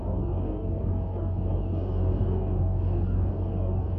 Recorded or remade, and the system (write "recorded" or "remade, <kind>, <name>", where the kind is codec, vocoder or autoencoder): remade, codec, DAC